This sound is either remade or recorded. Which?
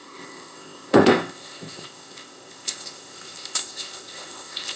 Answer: remade